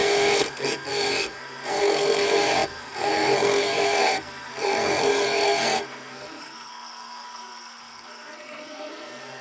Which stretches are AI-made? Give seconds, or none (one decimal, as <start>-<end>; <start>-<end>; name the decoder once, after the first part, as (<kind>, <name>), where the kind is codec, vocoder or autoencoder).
0.0-9.4 (codec, SNAC)